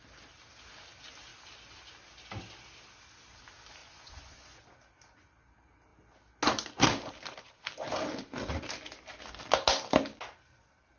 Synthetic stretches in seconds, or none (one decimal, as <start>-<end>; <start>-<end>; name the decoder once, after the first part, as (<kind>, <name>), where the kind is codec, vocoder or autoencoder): 3.8-4.6 (vocoder, Vocos)